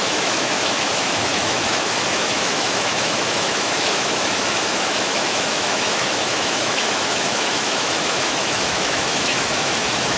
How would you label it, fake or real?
fake